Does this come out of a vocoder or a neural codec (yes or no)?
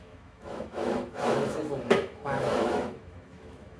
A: yes